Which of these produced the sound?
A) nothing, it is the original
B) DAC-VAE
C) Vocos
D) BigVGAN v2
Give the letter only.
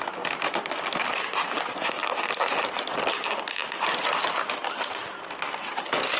A